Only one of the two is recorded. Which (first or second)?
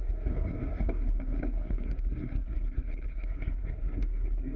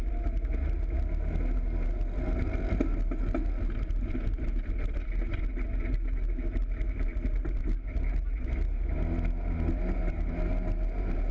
second